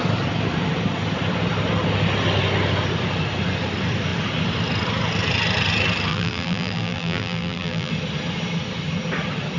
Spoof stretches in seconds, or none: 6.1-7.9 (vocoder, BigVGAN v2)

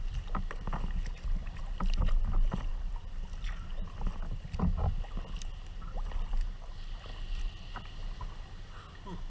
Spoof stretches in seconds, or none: 1.1-1.6 (vocoder, BigVGAN v2)

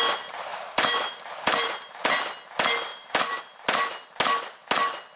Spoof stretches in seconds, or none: 0.5-2.1 (vocoder, BigVGAN v2); 2.9-3.4

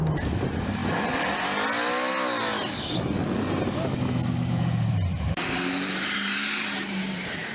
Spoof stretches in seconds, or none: 0.0-0.8 (vocoder, BigVGAN v2); 4.9-7.5